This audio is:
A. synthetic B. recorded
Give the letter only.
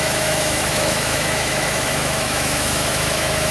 A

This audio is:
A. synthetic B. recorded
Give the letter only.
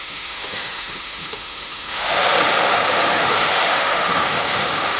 A